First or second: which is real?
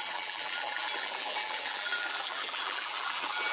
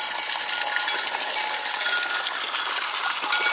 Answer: second